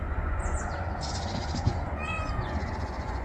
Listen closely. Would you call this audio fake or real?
fake